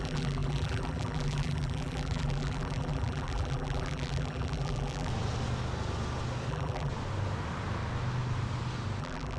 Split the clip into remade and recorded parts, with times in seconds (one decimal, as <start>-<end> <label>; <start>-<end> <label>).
0.0-5.1 remade; 5.1-6.5 recorded; 6.5-6.9 remade; 6.9-9.0 recorded; 9.0-9.4 remade